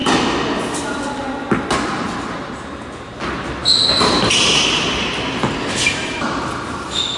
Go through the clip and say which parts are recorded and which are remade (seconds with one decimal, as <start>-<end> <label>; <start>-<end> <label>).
0.0-7.2 recorded